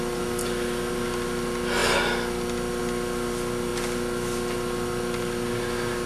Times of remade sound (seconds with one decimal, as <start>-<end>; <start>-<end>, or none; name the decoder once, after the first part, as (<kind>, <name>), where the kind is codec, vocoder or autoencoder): none